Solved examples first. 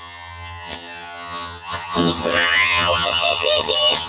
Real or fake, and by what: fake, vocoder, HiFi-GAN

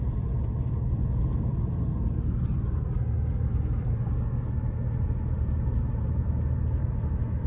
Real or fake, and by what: real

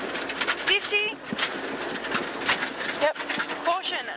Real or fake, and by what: real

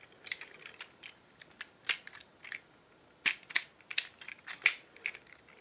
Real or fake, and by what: real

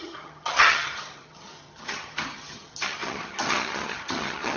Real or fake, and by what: fake, vocoder, HiFi-GAN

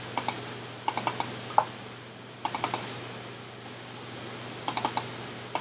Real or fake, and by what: real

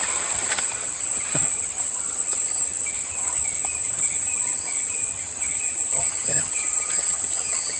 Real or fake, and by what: fake, vocoder, HiFi-GAN